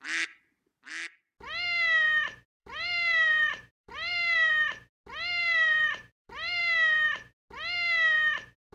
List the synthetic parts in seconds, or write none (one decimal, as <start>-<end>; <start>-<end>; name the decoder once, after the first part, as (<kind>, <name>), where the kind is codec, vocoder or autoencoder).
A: 2.6-4.5 (vocoder, BigVGAN v2); 5.4-6.6